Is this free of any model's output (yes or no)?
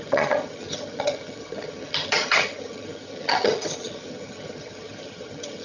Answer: no